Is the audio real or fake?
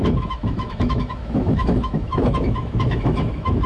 fake